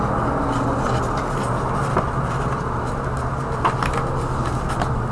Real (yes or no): yes